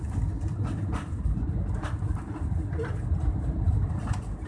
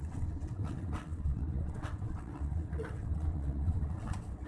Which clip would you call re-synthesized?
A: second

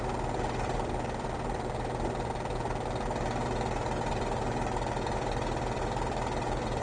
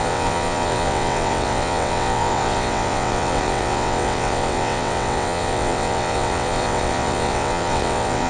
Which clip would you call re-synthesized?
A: second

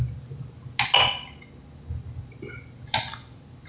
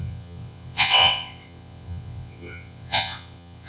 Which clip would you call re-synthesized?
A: second